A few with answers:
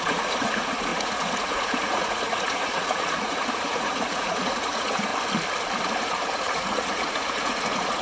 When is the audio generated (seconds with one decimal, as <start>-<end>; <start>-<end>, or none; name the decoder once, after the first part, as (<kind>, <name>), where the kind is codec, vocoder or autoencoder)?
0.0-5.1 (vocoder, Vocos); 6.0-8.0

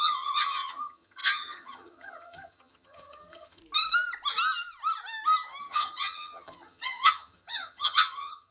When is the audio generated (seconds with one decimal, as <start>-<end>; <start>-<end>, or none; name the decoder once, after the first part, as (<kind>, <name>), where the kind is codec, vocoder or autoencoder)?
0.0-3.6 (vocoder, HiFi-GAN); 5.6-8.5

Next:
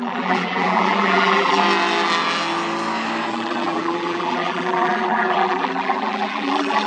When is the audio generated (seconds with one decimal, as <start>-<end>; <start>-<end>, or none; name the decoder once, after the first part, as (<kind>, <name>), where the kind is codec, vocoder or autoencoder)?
0.0-1.6 (vocoder, BigVGAN v2); 3.3-6.9

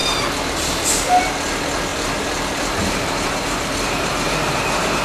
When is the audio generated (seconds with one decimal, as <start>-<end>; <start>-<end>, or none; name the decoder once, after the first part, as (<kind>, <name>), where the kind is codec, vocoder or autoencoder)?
1.9-5.0 (vocoder, BigVGAN v2)